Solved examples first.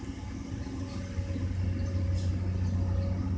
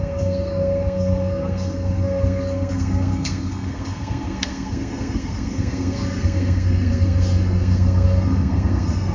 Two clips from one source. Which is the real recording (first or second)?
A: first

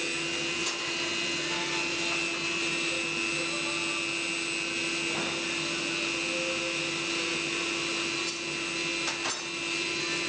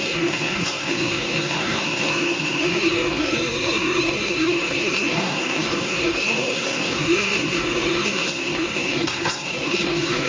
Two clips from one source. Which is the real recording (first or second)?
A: first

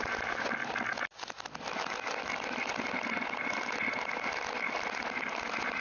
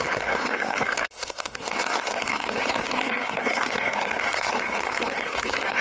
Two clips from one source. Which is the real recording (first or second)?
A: first